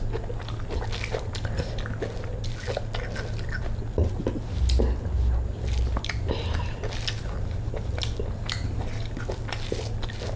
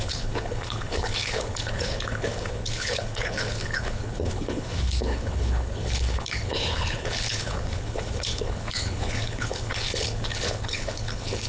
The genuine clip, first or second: first